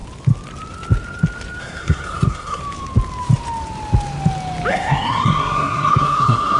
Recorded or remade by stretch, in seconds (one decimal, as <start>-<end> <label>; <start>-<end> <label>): 0.0-1.6 recorded; 1.6-2.6 remade; 2.6-4.7 recorded; 4.7-6.6 remade